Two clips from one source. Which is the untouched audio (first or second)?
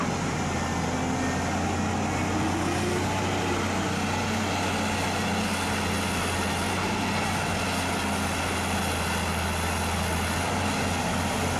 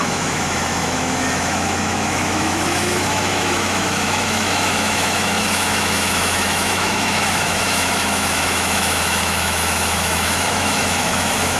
first